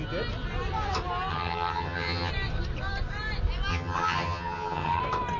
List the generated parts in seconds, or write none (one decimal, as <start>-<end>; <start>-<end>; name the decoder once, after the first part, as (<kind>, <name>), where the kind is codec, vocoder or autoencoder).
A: 1.3-2.3 (vocoder, HiFi-GAN); 3.7-5.0

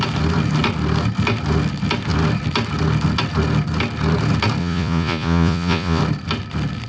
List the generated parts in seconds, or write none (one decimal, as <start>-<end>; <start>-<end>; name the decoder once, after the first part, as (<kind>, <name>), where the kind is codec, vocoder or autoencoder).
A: 4.6-6.0 (vocoder, Vocos)

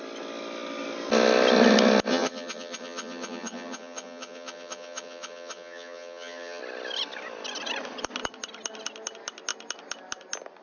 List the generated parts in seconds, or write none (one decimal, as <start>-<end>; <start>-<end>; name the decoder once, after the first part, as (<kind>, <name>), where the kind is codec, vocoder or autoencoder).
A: 2.1-6.6 (vocoder, HiFi-GAN)

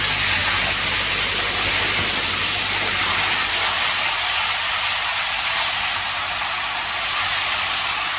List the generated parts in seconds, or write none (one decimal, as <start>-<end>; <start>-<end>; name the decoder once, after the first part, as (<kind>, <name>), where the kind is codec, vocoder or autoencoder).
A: none

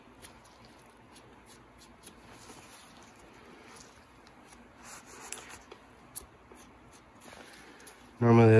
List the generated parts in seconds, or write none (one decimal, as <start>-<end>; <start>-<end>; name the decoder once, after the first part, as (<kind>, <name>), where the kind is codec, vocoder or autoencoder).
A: none

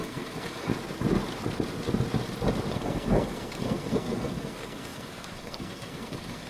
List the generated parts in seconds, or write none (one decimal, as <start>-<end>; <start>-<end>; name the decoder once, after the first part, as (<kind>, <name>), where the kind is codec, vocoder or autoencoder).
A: 0.0-0.7 (codec, SNAC); 2.7-6.5